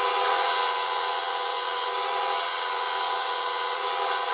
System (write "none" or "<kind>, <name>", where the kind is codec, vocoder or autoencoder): vocoder, WaveNeXt